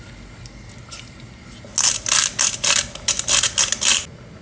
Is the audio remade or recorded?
recorded